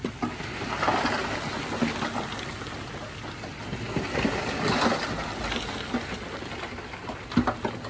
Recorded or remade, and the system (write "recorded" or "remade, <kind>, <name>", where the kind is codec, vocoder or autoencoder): recorded